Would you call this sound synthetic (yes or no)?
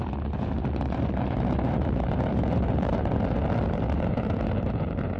yes